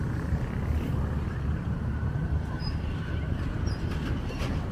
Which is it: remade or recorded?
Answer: recorded